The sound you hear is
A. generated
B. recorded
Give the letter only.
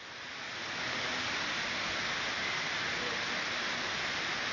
B